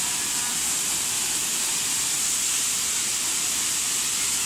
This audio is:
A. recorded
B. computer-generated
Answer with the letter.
A